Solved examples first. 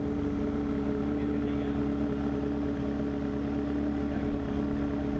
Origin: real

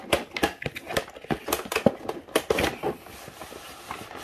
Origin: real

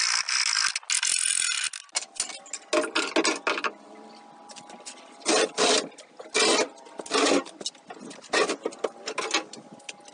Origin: real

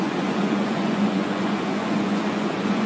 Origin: fake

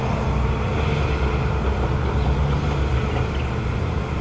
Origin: real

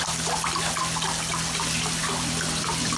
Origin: real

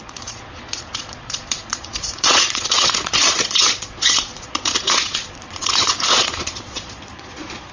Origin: fake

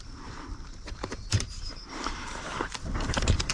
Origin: fake